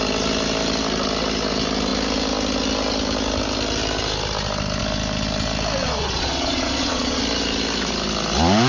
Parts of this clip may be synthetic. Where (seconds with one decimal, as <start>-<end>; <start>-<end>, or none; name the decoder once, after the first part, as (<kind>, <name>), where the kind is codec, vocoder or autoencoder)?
5.8-7.2 (vocoder, Vocos)